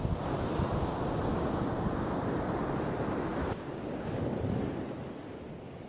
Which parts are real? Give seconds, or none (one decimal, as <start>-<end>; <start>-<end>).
0.0-1.3; 2.2-3.3; 4.2-5.9